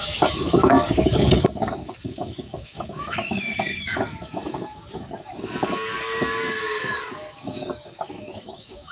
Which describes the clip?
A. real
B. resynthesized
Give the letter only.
B